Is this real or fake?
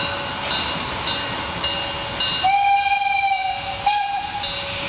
real